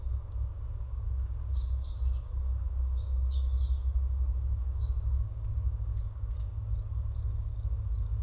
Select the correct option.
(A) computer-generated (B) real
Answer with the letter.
A